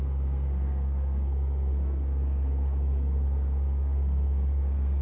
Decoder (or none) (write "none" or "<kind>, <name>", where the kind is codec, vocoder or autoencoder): codec, SNAC